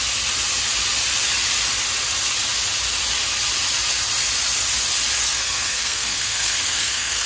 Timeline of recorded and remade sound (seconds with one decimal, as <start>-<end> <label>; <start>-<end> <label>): 0.0-5.2 recorded; 5.2-7.3 remade